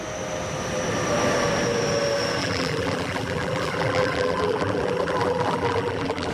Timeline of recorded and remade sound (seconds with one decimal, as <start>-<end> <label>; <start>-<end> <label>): 0.0-2.4 recorded; 2.4-6.3 remade